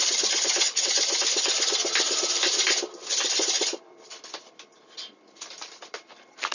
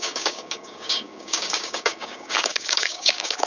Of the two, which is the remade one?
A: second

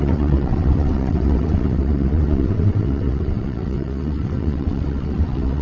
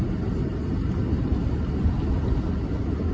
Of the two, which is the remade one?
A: first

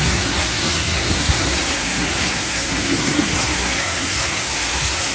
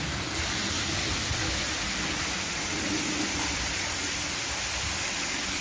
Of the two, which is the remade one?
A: first